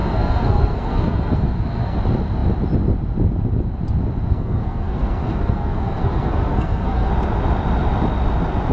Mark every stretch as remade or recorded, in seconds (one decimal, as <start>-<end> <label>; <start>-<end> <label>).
0.0-2.0 remade; 2.0-4.3 recorded; 4.3-7.1 remade; 7.1-8.7 recorded